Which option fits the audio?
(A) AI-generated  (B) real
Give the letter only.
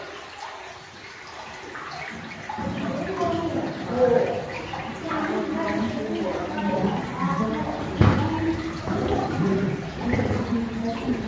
B